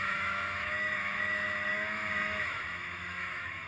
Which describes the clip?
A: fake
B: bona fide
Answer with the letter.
A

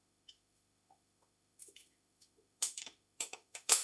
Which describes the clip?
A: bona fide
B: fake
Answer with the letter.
B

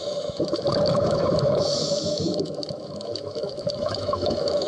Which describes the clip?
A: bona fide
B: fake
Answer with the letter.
B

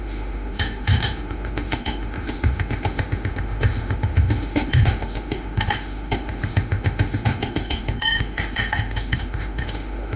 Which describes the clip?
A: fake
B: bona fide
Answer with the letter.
A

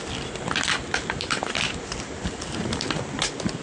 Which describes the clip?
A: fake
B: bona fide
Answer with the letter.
B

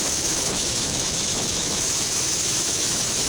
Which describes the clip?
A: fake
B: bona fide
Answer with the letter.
A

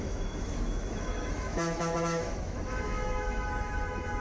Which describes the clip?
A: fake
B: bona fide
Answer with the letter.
A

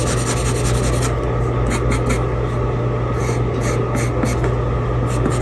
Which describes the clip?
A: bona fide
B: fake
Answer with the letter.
A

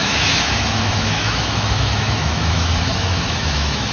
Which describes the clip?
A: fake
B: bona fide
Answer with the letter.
A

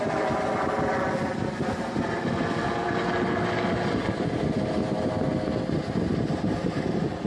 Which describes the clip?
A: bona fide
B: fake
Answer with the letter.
A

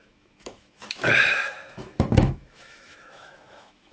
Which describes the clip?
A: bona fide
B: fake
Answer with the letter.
B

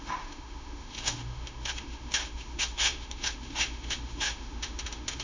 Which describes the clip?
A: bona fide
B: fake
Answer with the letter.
B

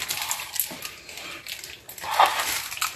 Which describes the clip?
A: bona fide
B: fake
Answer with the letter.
A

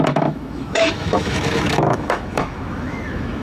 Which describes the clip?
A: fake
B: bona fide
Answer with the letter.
A